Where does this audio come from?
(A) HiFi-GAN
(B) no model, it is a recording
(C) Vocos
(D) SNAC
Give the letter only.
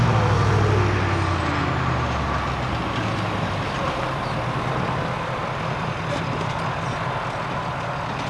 B